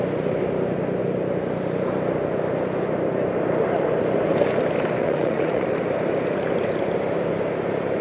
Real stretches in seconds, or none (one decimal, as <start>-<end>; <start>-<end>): 0.0-5.0; 5.7-8.0